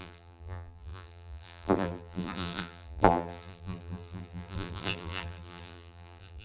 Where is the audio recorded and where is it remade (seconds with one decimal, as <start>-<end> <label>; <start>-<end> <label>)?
0.0-6.4 remade